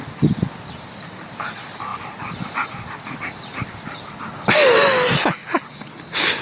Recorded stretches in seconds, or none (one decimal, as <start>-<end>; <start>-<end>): 0.0-6.4